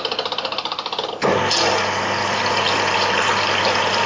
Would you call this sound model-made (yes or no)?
no